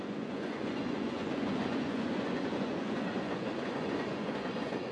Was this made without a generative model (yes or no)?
no